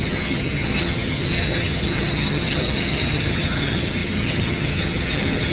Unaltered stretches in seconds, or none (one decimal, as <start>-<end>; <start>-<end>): none